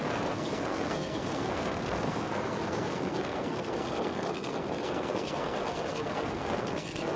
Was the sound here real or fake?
fake